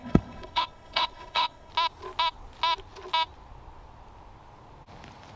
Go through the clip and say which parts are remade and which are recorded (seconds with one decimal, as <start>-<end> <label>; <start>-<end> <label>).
0.0-1.7 remade; 1.7-5.4 recorded